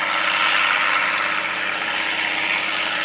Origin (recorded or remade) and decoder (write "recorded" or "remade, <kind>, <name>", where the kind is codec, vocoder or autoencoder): remade, vocoder, BigVGAN v2